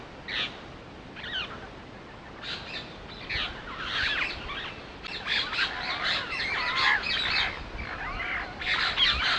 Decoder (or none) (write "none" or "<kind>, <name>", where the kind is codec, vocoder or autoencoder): none